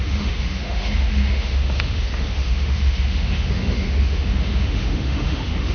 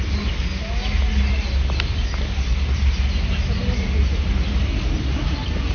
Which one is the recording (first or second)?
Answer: second